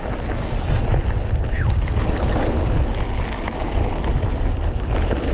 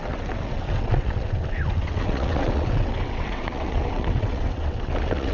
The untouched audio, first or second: first